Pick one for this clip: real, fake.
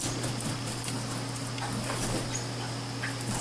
real